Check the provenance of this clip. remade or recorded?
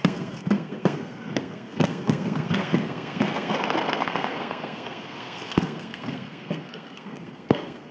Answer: remade